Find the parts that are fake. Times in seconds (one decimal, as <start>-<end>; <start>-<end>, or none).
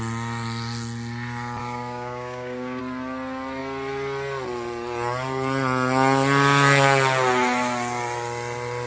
1.6-2.8